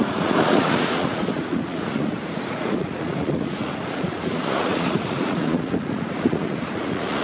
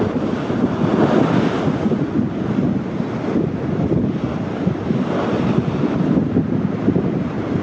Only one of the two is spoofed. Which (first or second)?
first